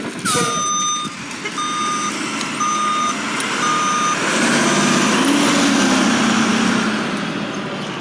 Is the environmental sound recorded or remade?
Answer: recorded